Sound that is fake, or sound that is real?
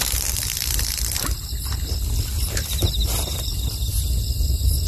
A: real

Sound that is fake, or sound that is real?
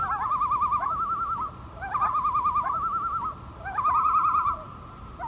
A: real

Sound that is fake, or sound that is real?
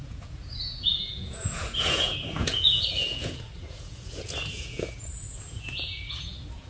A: fake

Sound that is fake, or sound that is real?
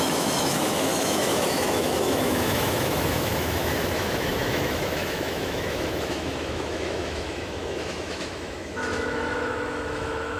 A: fake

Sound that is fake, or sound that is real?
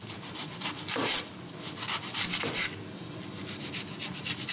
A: fake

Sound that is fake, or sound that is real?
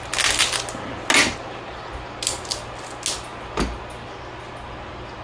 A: real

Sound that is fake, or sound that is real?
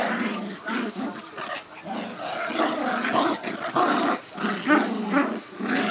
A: real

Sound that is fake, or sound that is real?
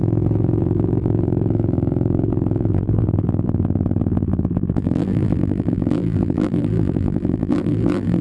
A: fake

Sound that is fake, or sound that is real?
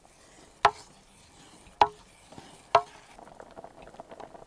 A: real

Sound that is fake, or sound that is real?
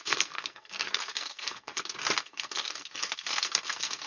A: fake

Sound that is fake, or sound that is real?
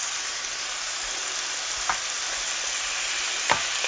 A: real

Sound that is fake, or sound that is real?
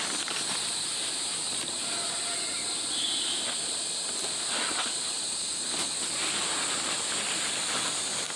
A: real